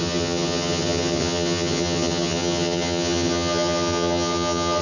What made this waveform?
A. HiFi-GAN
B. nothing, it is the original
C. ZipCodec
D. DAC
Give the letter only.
A